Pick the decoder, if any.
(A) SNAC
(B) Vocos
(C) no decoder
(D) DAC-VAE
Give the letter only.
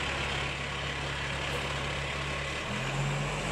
C